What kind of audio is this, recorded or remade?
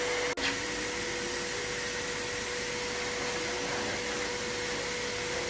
recorded